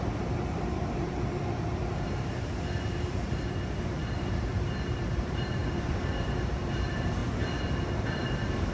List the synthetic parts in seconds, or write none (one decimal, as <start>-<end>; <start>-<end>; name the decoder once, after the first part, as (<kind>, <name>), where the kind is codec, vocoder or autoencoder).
0.0-7.2 (vocoder, BigVGAN v2); 8.0-8.7